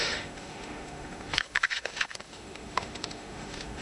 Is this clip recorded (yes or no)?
no